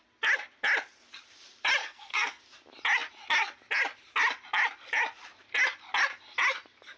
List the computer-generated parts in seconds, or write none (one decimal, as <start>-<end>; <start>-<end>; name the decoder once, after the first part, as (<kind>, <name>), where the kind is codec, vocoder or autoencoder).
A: 1.8-2.4 (codec, SNAC)